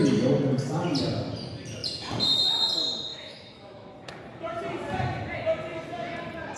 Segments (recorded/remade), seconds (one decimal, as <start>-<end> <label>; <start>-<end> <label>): 0.0-3.1 recorded; 3.1-3.9 remade; 3.9-6.6 recorded